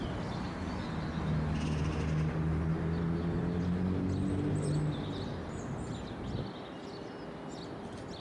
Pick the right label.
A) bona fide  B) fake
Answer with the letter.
A